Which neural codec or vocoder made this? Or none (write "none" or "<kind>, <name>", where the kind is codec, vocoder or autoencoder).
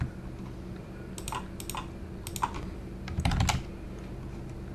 none